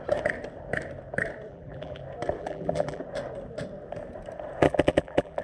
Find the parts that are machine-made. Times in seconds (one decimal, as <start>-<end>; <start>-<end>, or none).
1.5-2.0; 2.4-3.0; 4.6-5.4